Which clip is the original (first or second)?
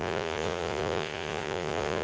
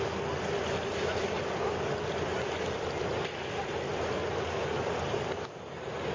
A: second